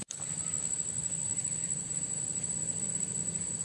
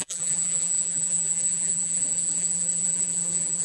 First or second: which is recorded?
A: first